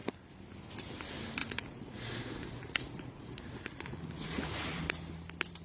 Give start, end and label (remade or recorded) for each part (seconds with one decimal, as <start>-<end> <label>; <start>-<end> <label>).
0.0-1.4 recorded; 1.4-4.8 remade; 4.8-5.6 recorded